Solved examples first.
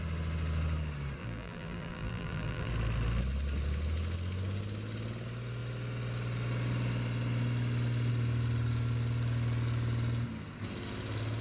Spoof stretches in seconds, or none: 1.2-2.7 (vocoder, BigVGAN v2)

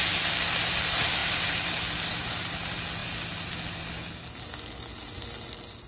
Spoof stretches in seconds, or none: 1.2-1.7 (vocoder, BigVGAN v2)

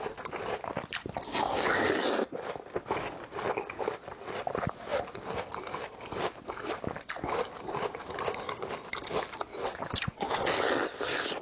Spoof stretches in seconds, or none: 9.5-10.4 (vocoder, WaveNeXt)

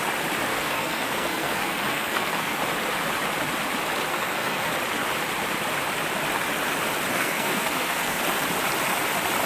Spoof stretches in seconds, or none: 0.5-2.6 (codec, SNAC); 4.1-4.7; 7.1-8.2

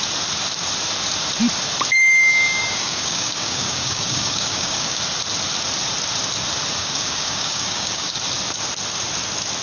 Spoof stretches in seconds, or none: 1.9-5.0 (codec, DAC); 6.8-8.1

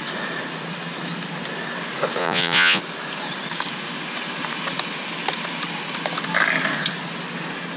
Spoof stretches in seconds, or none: 2.2-2.8 (vocoder, Vocos)